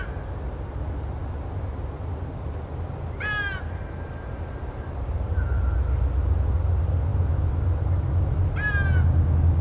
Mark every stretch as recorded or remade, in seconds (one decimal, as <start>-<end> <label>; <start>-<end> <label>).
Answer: 0.0-9.6 recorded